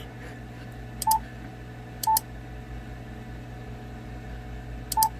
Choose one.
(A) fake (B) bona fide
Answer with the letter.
B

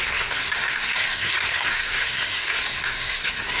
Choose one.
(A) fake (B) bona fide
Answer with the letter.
A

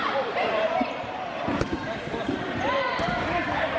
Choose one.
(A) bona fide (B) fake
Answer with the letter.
A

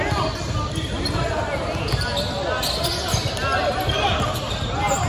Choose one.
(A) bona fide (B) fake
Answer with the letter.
A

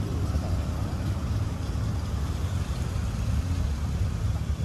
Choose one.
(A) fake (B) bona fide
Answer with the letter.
B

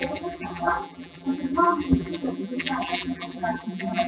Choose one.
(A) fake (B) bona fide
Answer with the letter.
A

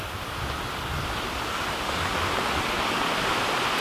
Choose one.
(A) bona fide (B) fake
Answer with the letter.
A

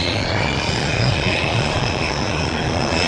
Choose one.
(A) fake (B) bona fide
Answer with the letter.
A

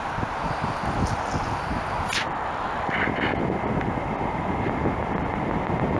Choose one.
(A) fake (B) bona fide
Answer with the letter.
B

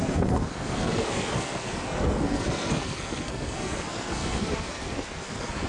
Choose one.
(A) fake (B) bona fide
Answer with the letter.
A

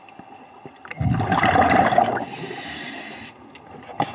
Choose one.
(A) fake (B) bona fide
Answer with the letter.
B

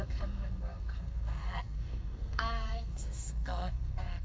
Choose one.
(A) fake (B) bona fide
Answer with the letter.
A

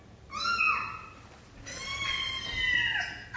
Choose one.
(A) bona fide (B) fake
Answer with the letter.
A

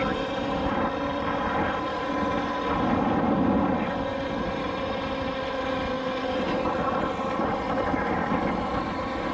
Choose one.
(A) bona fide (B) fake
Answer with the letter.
A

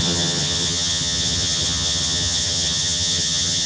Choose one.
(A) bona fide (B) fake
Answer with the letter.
B